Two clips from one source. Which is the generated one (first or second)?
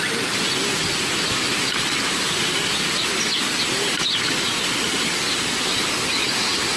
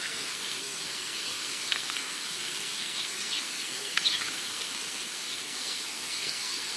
second